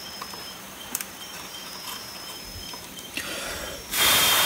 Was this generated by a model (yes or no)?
yes